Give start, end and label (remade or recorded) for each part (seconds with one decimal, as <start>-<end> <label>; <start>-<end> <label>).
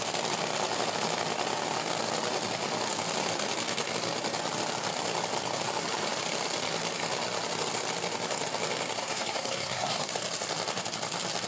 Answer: 0.0-9.0 recorded; 9.0-10.1 remade; 10.1-11.5 recorded